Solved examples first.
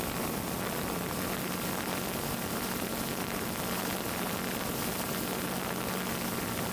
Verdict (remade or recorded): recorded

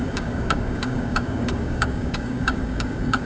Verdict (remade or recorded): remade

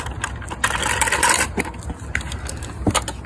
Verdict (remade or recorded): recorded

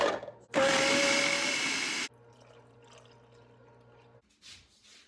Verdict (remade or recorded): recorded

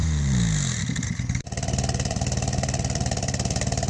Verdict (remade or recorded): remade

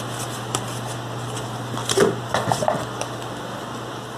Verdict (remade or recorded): recorded